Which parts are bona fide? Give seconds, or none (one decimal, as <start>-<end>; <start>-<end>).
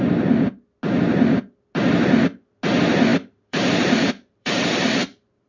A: 0.0-3.1; 5.0-5.5